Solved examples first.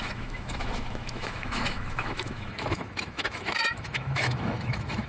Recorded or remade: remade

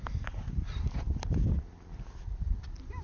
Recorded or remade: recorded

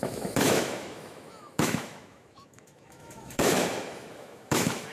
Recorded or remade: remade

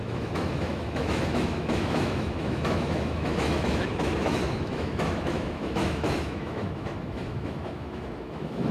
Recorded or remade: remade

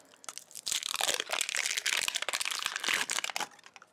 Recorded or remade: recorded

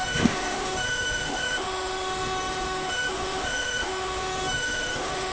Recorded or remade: remade